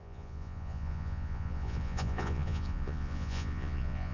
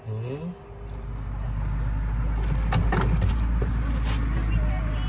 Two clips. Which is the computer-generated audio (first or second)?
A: first